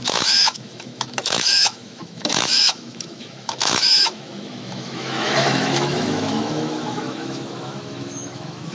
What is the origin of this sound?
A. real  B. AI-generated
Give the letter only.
B